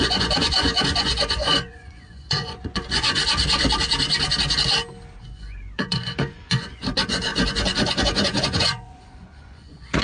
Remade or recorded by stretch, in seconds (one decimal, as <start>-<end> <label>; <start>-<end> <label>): 0.0-3.3 remade; 3.3-5.2 recorded; 5.2-10.0 remade

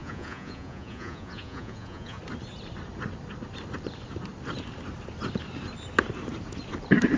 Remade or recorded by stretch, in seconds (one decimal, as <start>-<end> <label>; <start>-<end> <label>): 0.0-2.2 remade; 2.2-7.2 recorded

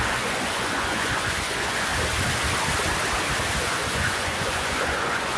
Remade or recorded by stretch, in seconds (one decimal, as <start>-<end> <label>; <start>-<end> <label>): 0.0-1.9 remade; 1.9-3.6 recorded; 3.6-5.4 remade

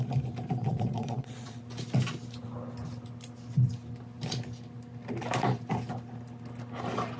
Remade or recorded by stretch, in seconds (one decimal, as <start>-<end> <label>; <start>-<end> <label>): 0.0-0.6 recorded; 0.6-1.6 remade; 1.6-7.2 recorded

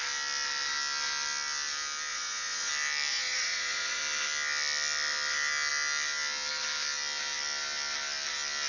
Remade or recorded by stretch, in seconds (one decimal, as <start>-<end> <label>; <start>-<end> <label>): 0.0-2.1 recorded; 2.1-2.7 remade; 2.7-3.1 recorded; 3.1-4.0 remade; 4.0-8.7 recorded